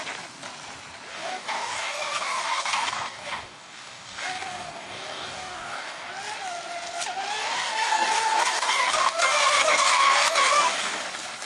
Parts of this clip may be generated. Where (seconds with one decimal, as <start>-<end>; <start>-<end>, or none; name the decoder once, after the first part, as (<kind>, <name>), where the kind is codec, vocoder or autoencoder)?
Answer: 1.1-6.1 (codec, DAC); 7.4-11.0